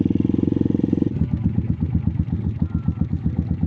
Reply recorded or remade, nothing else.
recorded